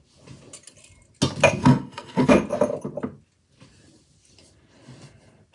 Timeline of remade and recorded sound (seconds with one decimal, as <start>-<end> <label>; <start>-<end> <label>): 0.0-1.6 recorded; 1.6-2.3 remade; 2.3-5.5 recorded